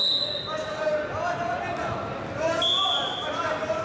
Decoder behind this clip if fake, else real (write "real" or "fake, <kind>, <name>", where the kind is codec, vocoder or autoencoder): real